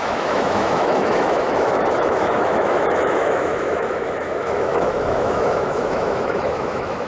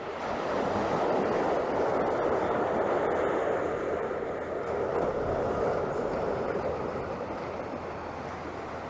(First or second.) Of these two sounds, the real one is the second